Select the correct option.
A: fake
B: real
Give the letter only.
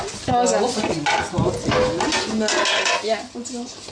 B